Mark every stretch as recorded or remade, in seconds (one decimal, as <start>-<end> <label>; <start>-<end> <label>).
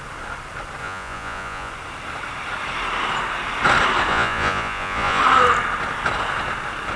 0.0-0.8 recorded; 0.8-1.7 remade; 1.7-4.1 recorded; 4.1-5.2 remade; 5.2-7.0 recorded